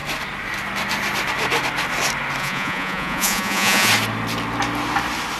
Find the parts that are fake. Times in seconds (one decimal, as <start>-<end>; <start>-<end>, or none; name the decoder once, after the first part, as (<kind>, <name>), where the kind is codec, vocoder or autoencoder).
2.4-3.9 (vocoder, Vocos)